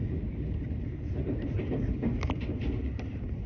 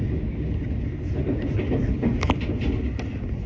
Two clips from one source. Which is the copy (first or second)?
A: first